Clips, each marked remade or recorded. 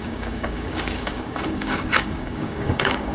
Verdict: remade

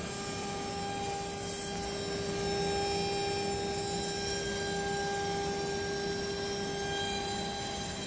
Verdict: recorded